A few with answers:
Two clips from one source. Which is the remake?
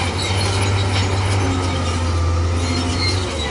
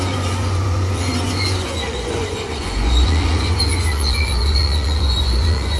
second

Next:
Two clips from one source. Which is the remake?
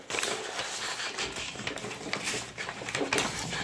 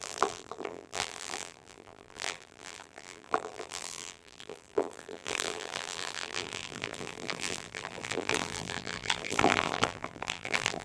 second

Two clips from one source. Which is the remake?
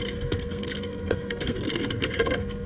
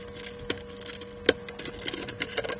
first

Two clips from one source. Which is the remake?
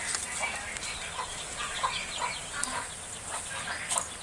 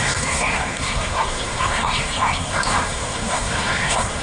second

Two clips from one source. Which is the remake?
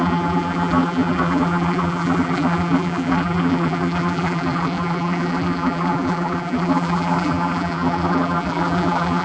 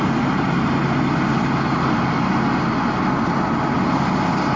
first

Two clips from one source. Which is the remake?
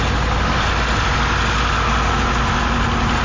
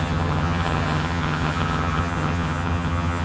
second